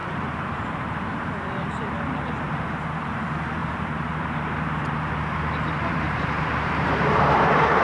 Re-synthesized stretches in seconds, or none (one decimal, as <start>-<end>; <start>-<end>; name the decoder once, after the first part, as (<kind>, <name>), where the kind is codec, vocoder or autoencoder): 0.0-7.8 (vocoder, BigVGAN v2)